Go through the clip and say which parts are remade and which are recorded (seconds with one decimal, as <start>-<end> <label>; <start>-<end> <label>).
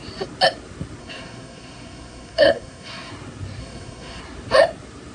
0.0-1.0 recorded; 1.0-3.1 remade; 3.1-3.6 recorded; 3.6-4.2 remade; 4.2-5.1 recorded